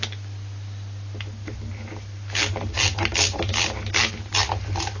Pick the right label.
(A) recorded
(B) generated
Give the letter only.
A